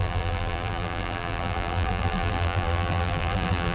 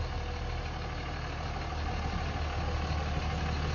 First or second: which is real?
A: second